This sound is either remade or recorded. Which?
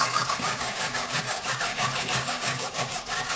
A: remade